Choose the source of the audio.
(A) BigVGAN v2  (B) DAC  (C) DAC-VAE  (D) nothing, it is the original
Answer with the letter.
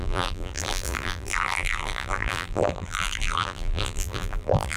A